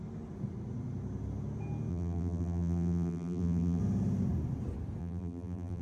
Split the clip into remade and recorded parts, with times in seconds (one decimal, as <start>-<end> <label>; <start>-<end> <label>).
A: 0.0-1.9 recorded; 1.9-3.8 remade; 3.8-5.0 recorded; 5.0-5.8 remade